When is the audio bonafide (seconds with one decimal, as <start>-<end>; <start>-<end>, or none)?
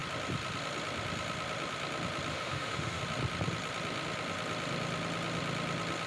0.0-2.3; 3.0-6.1